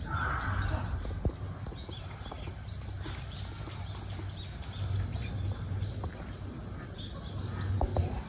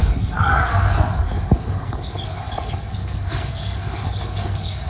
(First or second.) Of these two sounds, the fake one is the second